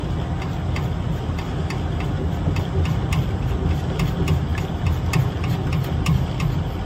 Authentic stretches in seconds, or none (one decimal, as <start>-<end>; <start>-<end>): 0.0-6.9